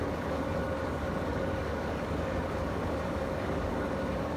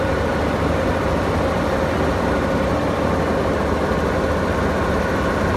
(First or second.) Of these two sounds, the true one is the second